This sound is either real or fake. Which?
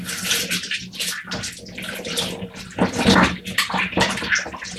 real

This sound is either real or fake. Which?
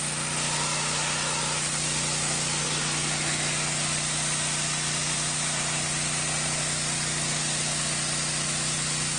real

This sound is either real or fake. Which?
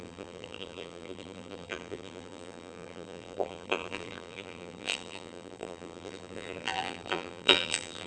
fake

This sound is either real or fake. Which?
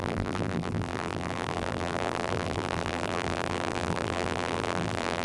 fake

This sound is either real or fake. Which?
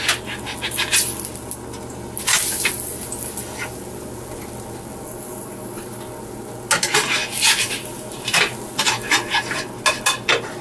real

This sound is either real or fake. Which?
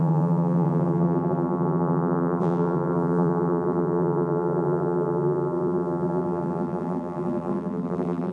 fake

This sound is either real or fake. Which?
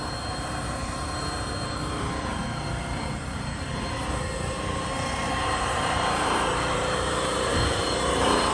fake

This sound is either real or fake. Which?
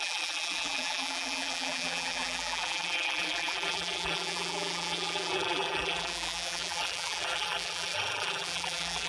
fake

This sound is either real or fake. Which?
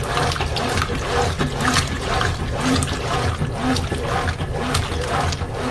real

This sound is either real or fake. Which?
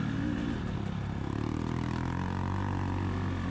real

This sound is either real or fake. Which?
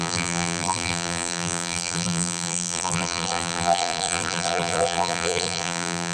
fake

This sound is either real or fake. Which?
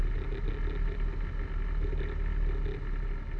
real